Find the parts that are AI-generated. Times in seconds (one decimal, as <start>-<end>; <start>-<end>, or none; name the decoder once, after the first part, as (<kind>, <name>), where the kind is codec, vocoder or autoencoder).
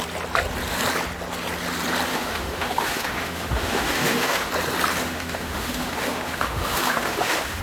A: 2.1-4.5 (autoencoder, DAC-VAE); 5.0-7.6